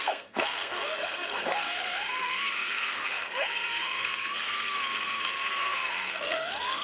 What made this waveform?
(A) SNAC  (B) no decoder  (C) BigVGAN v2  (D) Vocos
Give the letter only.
A